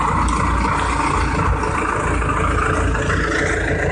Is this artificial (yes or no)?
no